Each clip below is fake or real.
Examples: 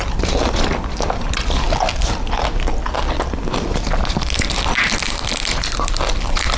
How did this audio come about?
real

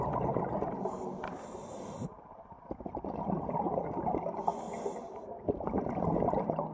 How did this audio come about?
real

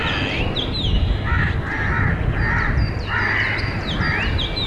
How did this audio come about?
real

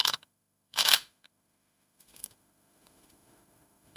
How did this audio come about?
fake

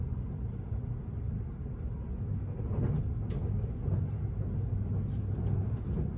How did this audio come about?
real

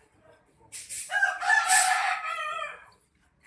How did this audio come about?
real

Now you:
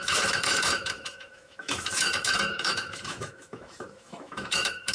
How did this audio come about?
fake